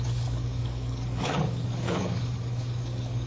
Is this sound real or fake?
fake